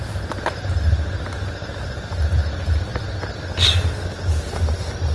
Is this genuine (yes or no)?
yes